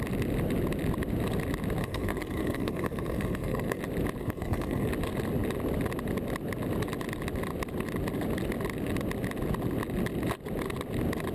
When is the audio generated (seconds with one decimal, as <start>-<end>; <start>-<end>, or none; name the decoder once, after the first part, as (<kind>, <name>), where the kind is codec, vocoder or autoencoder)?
1.8-3.8 (codec, SNAC); 4.2-4.9